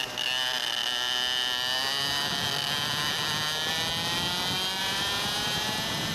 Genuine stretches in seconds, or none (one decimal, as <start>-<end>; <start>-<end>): 0.0-4.8